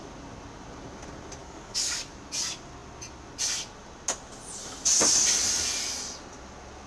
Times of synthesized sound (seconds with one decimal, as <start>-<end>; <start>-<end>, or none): 1.4-2.1